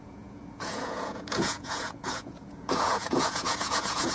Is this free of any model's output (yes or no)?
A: no